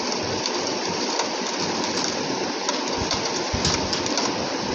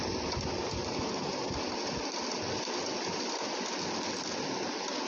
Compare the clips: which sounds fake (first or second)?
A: first